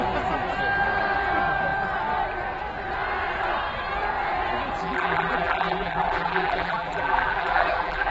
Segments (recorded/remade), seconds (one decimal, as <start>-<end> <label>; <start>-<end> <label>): 0.0-4.8 recorded; 4.8-8.1 remade